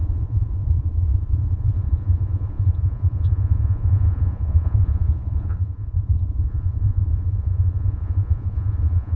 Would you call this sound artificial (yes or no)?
yes